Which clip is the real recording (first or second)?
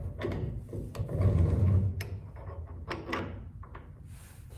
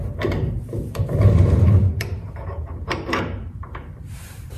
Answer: first